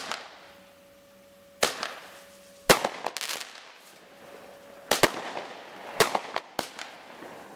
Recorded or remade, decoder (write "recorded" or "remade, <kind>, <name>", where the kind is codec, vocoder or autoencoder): recorded